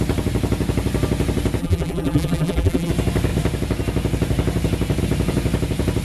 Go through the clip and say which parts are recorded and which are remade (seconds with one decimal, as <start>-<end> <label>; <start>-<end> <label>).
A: 0.0-1.6 recorded; 1.6-2.9 remade; 2.9-6.0 recorded